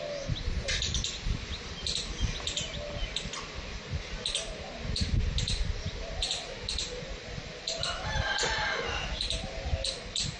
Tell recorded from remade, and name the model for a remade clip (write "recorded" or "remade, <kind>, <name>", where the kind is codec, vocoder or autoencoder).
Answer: recorded